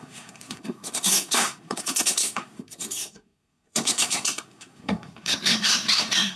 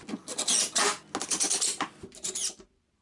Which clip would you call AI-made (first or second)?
first